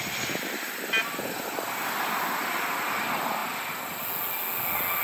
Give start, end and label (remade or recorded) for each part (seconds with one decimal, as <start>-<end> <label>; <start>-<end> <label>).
0.0-5.0 recorded

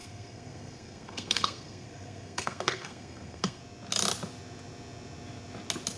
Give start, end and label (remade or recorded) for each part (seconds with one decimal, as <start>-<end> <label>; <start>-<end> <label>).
0.0-3.6 remade; 3.6-6.0 recorded

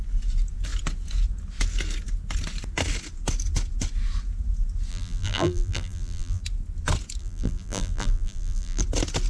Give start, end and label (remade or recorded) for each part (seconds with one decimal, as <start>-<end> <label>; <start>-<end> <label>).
0.0-4.9 recorded; 4.9-6.4 remade; 6.4-7.2 recorded; 7.2-8.8 remade; 8.8-9.3 recorded

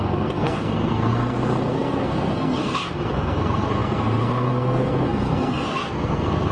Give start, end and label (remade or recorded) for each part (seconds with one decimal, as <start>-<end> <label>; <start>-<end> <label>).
0.0-6.5 remade

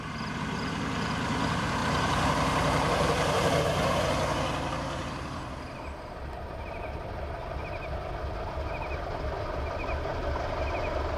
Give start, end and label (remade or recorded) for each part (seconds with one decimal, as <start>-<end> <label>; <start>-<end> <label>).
0.0-1.8 recorded; 1.8-3.6 remade; 3.6-11.2 recorded

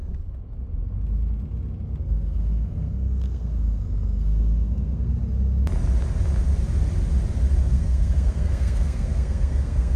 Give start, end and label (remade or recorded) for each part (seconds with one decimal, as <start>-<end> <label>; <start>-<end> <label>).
0.0-2.0 recorded; 2.0-5.1 remade; 5.1-7.6 recorded; 7.6-10.0 remade

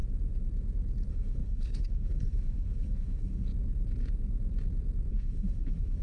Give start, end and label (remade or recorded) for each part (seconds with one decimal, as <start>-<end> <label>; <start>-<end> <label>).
0.0-1.1 recorded; 1.1-3.5 remade; 3.5-5.1 recorded; 5.1-6.0 remade